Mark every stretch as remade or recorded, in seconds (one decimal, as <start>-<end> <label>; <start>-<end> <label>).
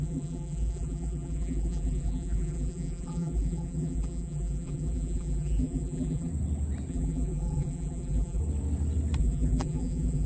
0.0-6.3 remade; 6.3-6.9 recorded; 6.9-8.4 remade; 8.4-9.2 recorded; 9.2-10.3 remade